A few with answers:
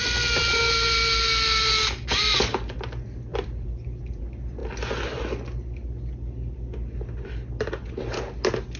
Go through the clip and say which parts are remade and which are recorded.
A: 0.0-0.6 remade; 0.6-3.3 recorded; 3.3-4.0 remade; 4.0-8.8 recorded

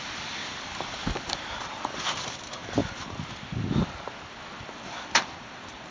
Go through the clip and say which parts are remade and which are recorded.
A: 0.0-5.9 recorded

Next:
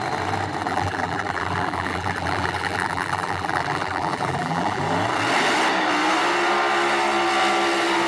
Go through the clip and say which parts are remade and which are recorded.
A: 0.0-0.6 recorded; 0.6-4.8 remade; 4.8-8.1 recorded

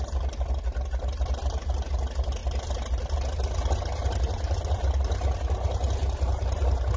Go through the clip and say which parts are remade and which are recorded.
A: 0.0-7.0 recorded

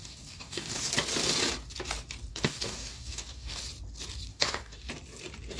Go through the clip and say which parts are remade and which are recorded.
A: 0.0-0.9 remade; 0.9-2.3 recorded; 2.3-3.6 remade; 3.6-4.3 recorded; 4.3-4.9 remade; 4.9-5.6 recorded

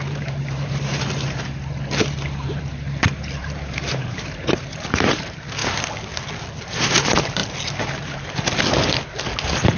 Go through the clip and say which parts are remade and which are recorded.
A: 0.0-5.6 remade; 5.6-6.6 recorded; 6.6-7.4 remade; 7.4-9.8 recorded